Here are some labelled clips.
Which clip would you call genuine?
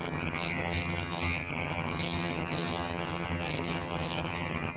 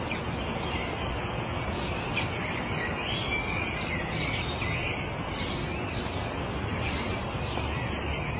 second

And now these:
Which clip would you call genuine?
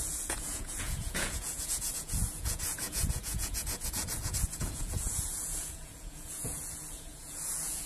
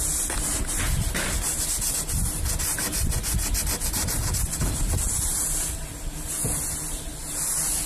second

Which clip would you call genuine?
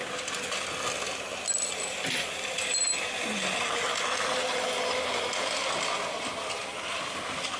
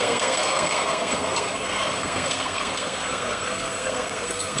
first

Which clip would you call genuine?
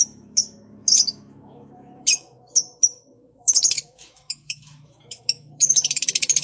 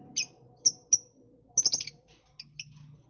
second